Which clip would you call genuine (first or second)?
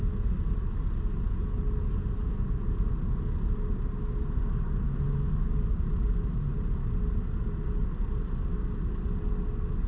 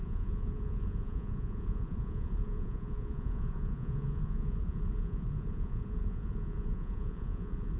first